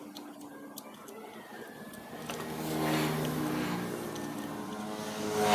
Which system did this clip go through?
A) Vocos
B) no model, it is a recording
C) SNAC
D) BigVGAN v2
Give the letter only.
B